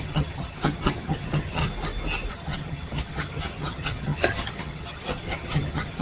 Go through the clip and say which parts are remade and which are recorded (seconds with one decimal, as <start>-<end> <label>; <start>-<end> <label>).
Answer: 0.0-1.6 remade; 1.6-2.3 recorded; 2.3-6.0 remade